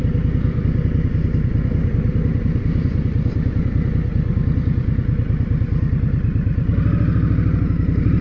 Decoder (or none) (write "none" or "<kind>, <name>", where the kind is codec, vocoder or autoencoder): none